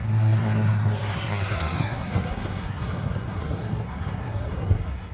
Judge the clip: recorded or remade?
remade